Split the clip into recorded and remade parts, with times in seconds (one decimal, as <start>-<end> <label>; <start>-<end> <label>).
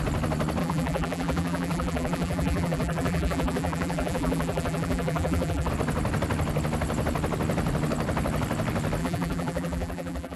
0.0-0.6 recorded; 0.6-5.7 remade; 5.7-9.0 recorded; 9.0-10.4 remade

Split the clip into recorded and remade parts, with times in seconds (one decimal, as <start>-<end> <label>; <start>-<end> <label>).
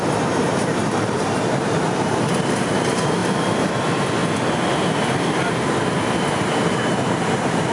0.0-4.2 remade; 4.2-4.8 recorded; 4.8-7.7 remade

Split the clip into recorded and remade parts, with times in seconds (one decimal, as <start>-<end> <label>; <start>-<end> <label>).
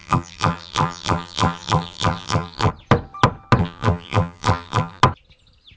0.0-2.7 remade; 2.7-3.6 recorded; 3.6-5.0 remade; 5.0-5.8 recorded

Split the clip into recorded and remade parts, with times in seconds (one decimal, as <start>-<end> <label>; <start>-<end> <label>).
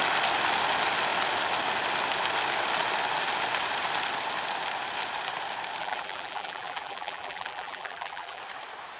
0.0-5.8 recorded; 5.8-8.4 remade; 8.4-9.0 recorded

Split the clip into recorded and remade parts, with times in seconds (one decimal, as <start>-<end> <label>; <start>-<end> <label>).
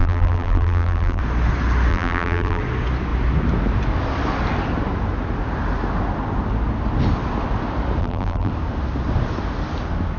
0.0-1.2 remade; 1.2-1.9 recorded; 1.9-2.6 remade; 2.6-8.0 recorded; 8.0-8.5 remade; 8.5-10.2 recorded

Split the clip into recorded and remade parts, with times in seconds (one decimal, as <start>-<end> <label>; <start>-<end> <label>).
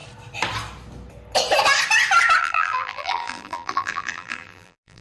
0.0-2.4 recorded; 2.4-5.0 remade